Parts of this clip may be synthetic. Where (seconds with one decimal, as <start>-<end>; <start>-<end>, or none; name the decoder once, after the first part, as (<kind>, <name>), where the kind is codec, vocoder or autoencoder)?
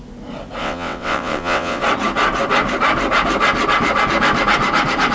0.6-1.8 (vocoder, WaveNeXt)